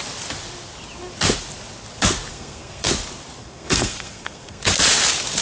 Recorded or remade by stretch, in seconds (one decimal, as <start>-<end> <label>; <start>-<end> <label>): 0.0-2.3 recorded; 2.3-2.9 remade; 2.9-3.4 recorded; 3.4-4.7 remade; 4.7-5.4 recorded